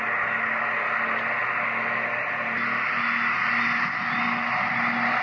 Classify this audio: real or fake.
real